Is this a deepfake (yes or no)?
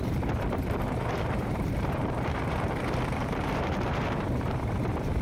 yes